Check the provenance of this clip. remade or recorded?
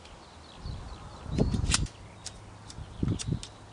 recorded